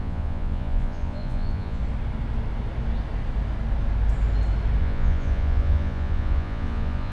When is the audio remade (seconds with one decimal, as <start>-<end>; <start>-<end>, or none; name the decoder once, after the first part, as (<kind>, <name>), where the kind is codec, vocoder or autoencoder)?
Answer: 0.0-1.8 (vocoder, Vocos); 4.8-7.1